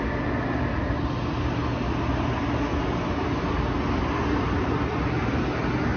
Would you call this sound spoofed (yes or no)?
no